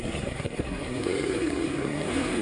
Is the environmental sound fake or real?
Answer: fake